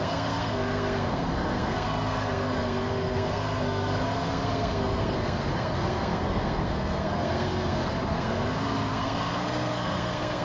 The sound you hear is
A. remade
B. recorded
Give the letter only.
A